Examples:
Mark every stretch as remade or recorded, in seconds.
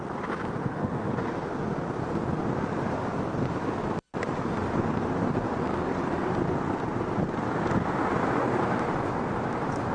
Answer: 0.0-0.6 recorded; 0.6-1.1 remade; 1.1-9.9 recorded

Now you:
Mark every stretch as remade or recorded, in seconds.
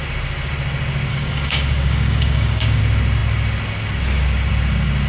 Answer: 0.0-1.1 recorded; 1.1-2.8 remade; 2.8-5.1 recorded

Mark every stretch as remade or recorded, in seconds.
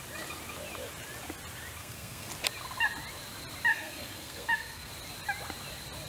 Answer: 0.0-1.8 recorded; 1.8-2.3 remade; 2.3-3.7 recorded; 3.7-4.9 remade; 4.9-6.1 recorded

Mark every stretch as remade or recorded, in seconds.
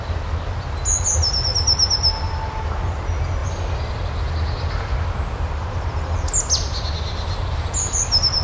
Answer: 0.0-8.4 recorded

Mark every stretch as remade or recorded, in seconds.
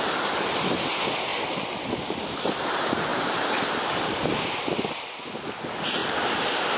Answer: 0.0-6.8 recorded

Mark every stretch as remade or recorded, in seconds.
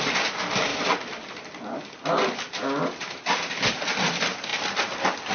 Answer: 0.0-5.3 recorded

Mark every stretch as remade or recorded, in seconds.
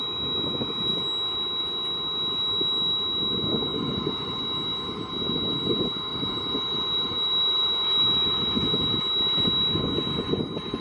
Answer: 0.0-3.7 recorded; 3.7-4.4 remade; 4.4-6.1 recorded; 6.1-9.0 remade; 9.0-10.8 recorded